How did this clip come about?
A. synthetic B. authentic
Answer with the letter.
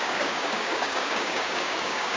A